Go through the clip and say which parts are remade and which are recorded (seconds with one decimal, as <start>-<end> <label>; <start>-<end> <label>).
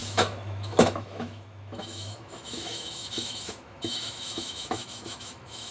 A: 0.0-5.7 remade